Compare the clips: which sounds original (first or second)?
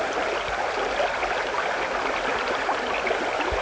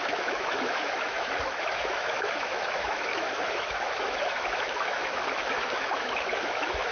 first